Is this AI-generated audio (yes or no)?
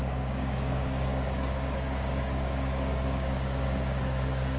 yes